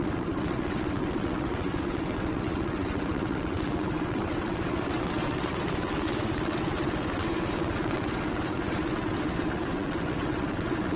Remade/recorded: remade